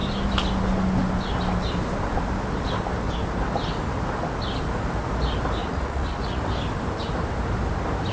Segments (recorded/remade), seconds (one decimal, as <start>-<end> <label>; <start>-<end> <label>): 0.0-5.6 recorded; 5.6-6.4 remade; 6.4-8.1 recorded